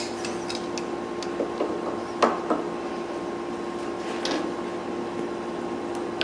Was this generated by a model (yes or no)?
no